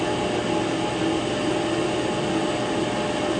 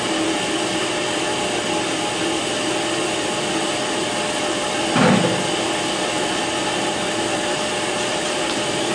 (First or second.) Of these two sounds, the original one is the first